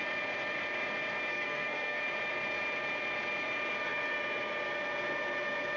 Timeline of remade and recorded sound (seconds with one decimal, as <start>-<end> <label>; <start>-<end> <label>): 0.0-1.3 recorded; 1.3-2.0 remade; 2.0-5.8 recorded